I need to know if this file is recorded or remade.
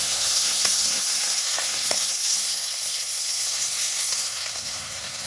remade